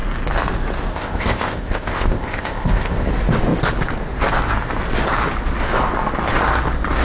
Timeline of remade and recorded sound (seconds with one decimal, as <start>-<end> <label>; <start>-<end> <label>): 0.0-0.9 recorded; 0.9-3.1 remade; 3.1-7.0 recorded